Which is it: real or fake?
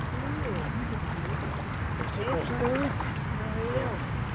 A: real